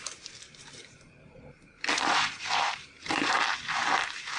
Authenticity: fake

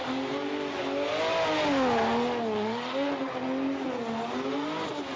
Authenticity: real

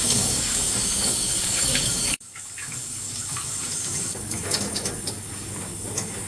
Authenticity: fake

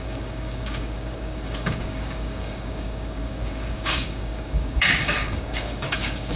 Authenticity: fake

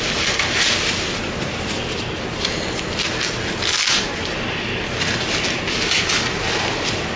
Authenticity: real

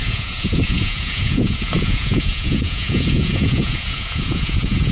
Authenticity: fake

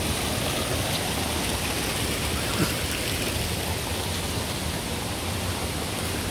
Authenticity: real